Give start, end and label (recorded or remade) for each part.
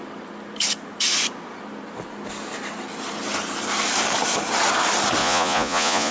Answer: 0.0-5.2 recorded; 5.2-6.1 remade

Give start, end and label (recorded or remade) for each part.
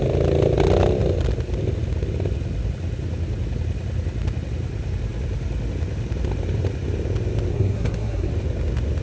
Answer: 0.0-7.5 recorded; 7.5-8.3 remade; 8.3-9.0 recorded